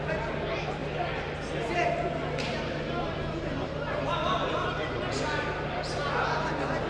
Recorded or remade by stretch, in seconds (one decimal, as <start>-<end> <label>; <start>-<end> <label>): 0.0-6.9 recorded